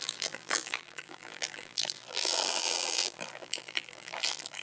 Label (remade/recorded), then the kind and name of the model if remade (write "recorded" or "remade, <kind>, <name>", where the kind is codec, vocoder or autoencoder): remade, vocoder, BigVGAN v2